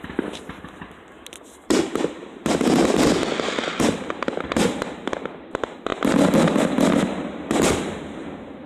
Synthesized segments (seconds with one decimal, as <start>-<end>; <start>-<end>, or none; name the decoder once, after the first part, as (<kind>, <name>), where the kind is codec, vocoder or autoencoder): none